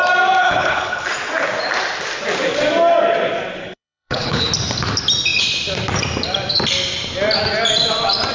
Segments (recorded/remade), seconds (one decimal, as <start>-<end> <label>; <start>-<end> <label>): 0.0-0.4 recorded; 0.4-1.1 remade; 1.1-3.6 recorded; 3.6-4.5 remade; 4.5-8.3 recorded